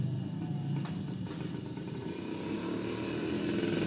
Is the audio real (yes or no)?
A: yes